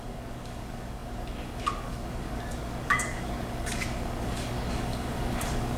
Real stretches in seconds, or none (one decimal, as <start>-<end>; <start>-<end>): none